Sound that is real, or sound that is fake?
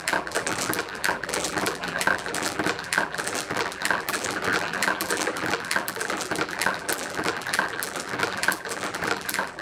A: fake